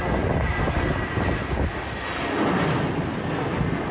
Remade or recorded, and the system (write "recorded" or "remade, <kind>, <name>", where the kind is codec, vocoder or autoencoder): recorded